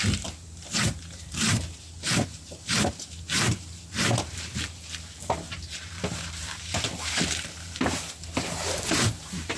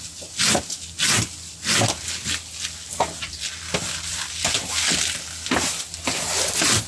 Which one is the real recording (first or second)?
second